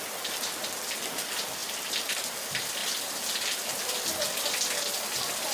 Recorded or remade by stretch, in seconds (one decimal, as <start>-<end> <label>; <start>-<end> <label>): 0.0-5.5 recorded